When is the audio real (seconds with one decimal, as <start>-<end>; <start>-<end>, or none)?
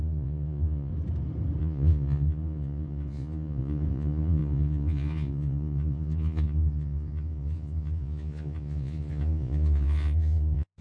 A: 0.9-1.6